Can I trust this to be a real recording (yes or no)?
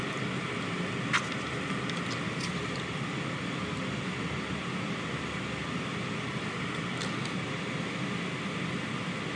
yes